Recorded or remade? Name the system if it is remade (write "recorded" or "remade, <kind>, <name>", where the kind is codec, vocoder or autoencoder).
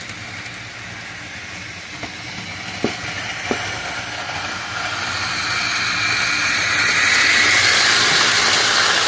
recorded